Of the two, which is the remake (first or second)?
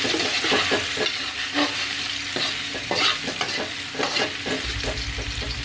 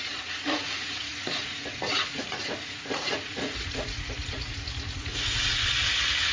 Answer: second